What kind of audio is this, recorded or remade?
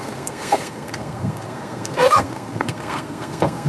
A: remade